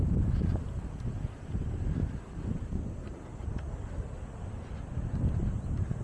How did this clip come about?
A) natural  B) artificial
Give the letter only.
A